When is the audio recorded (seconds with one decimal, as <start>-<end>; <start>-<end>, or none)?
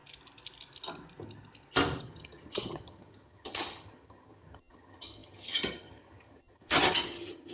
0.0-2.0